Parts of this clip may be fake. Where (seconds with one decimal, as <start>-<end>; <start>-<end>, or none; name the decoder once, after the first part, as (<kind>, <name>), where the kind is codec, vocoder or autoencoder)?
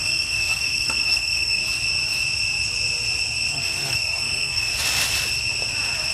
0.0-1.6 (codec, SNAC); 3.5-4.7